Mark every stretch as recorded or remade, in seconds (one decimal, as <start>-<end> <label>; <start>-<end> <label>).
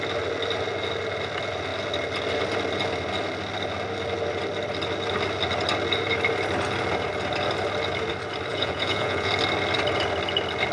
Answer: 0.0-8.5 recorded; 8.5-9.3 remade; 9.3-10.7 recorded